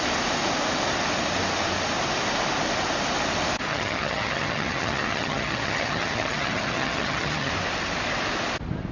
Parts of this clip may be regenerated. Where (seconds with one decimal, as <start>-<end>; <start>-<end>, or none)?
3.7-7.5